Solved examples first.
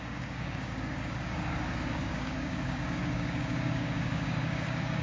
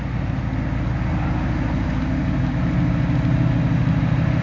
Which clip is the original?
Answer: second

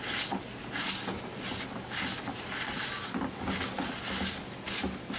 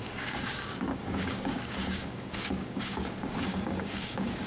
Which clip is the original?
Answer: first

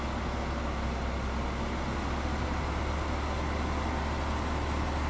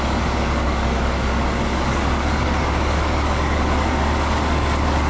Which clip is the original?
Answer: first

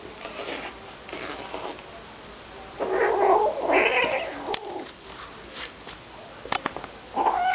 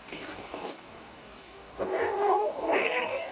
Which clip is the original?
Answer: first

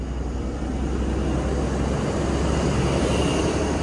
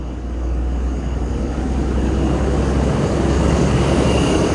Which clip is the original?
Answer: first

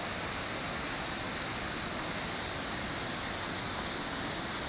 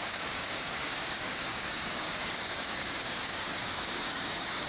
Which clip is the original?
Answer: first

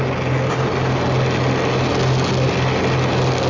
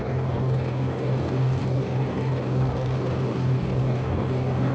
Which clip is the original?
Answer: first